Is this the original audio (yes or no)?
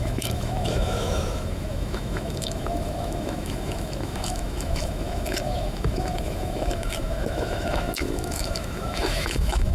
no